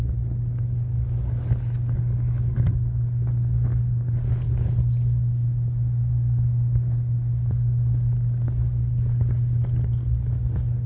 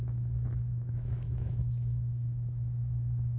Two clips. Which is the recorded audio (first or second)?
first